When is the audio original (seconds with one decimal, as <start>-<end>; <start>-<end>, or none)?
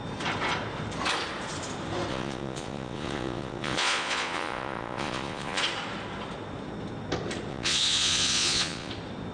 0.0-2.1; 5.6-7.5; 8.9-9.3